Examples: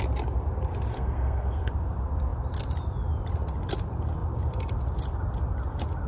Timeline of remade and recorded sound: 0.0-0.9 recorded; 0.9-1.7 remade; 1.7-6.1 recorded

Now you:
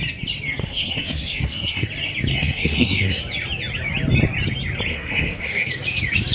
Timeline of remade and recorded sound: 0.0-0.6 recorded; 0.6-1.9 remade; 1.9-2.3 recorded; 2.3-3.2 remade; 3.2-4.9 recorded; 4.9-5.7 remade; 5.7-6.3 recorded

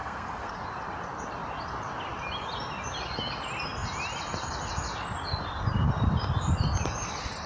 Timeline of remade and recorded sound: 0.0-0.5 remade; 0.5-7.5 recorded

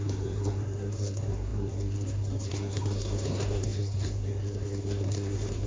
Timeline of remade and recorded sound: 0.0-5.7 remade

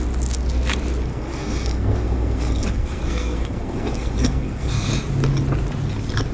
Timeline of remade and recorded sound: 0.0-1.1 recorded; 1.1-4.9 remade; 4.9-6.3 recorded